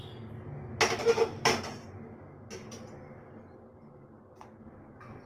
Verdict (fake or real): real